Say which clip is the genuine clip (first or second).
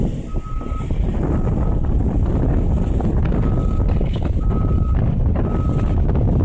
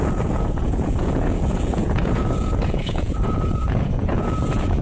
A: first